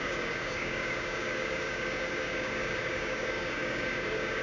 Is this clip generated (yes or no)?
yes